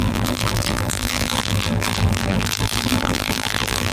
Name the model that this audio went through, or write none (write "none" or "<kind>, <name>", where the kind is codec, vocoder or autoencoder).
vocoder, BigVGAN v2